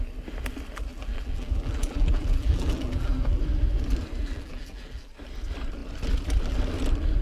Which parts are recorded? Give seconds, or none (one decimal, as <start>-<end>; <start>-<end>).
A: 0.0-0.9; 3.4-4.2; 5.1-7.2